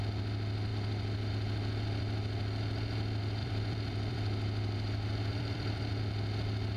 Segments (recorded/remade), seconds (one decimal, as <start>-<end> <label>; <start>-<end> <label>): 0.0-0.7 recorded; 0.7-1.3 remade; 1.3-3.4 recorded; 3.4-6.0 remade; 6.0-6.8 recorded